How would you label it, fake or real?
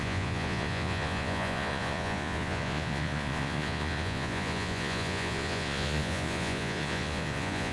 fake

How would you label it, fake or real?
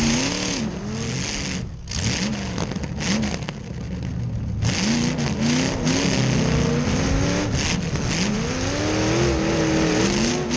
real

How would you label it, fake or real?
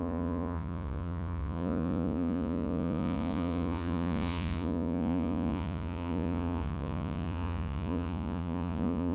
fake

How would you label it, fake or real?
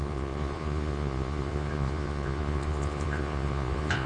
fake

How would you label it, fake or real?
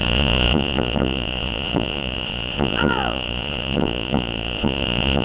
fake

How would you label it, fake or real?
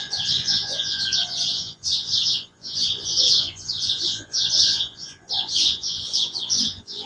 fake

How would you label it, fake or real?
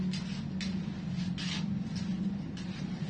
real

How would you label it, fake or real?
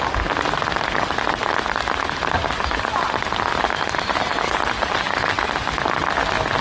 real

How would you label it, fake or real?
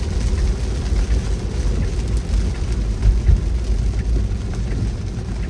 real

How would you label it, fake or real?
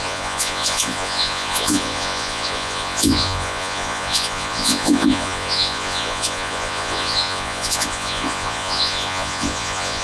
fake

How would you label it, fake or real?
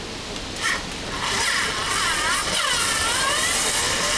real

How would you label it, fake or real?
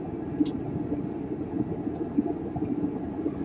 real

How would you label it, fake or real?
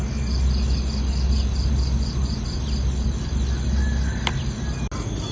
real